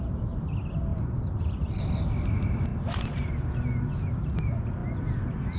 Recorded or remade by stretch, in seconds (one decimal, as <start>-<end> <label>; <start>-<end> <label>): 0.0-0.9 recorded; 0.9-1.8 remade; 1.8-5.6 recorded